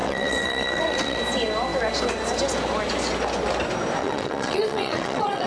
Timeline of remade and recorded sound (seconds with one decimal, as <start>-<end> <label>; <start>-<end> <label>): 0.0-1.2 remade; 1.2-4.0 recorded; 4.0-5.5 remade